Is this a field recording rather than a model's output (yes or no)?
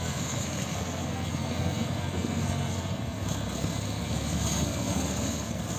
no